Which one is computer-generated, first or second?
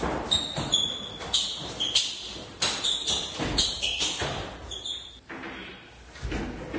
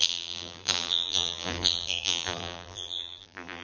second